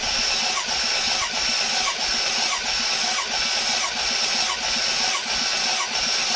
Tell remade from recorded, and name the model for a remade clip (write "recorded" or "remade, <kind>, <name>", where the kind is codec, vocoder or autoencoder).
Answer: recorded